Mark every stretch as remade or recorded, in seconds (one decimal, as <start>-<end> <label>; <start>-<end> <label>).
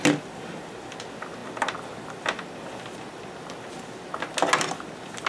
0.0-5.3 recorded